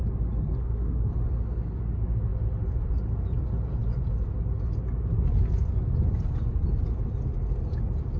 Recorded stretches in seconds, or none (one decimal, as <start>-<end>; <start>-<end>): 0.0-0.4; 1.1-8.2